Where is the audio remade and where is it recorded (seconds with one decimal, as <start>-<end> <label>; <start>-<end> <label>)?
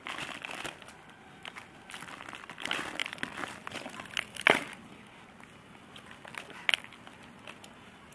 0.0-8.1 recorded